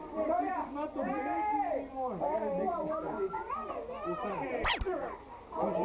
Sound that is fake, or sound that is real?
real